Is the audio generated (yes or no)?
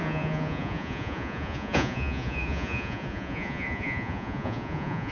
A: yes